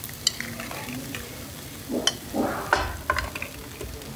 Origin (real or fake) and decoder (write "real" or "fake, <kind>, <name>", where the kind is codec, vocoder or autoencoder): real